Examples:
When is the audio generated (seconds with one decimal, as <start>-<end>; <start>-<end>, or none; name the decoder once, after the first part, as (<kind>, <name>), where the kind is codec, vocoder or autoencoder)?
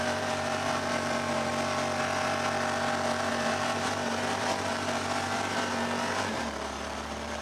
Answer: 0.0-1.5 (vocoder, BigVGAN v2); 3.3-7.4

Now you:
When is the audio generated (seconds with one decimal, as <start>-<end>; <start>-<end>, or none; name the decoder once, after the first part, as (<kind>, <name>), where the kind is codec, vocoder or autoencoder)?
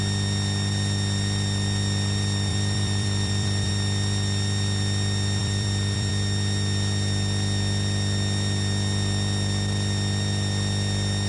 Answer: 2.5-3.7 (vocoder, BigVGAN v2); 5.4-6.1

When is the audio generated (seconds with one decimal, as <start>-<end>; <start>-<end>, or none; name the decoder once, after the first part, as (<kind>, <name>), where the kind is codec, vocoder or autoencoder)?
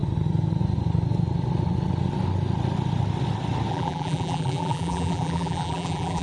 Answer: 3.7-6.2 (vocoder, BigVGAN v2)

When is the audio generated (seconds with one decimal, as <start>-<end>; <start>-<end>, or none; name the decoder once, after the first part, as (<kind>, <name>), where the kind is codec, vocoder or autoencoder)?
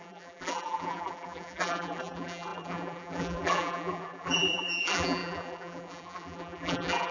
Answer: 0.0-7.1 (vocoder, BigVGAN v2)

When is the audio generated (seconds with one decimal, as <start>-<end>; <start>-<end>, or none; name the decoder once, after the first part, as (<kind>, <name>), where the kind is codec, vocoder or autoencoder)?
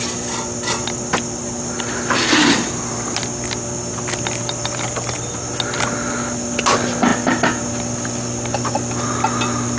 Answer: none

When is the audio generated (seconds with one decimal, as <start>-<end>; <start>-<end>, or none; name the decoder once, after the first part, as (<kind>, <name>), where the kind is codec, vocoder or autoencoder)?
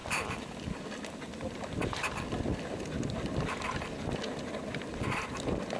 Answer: 0.0-0.8 (vocoder, BigVGAN v2)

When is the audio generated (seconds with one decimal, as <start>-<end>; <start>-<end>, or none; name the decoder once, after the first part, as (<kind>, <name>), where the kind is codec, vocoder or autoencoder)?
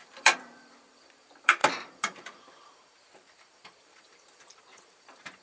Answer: 0.0-5.4 (vocoder, BigVGAN v2)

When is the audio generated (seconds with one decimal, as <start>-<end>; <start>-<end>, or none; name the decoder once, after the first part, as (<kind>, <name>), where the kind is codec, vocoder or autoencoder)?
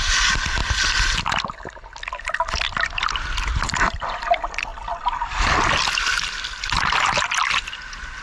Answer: 0.0-0.6 (vocoder, BigVGAN v2); 2.4-4.7